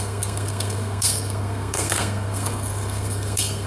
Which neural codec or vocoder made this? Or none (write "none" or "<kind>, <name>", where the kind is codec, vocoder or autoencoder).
codec, SNAC